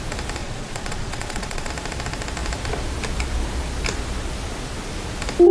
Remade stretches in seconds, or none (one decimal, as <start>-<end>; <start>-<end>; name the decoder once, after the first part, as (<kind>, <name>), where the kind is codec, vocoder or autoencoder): 0.4-1.7 (vocoder, Vocos)